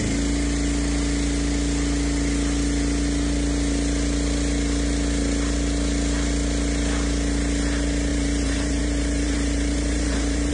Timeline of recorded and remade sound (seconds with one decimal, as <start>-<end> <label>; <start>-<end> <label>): 0.0-8.1 recorded; 8.1-10.5 remade